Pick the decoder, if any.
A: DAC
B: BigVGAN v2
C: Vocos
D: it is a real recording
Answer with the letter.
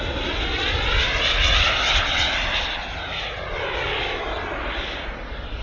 D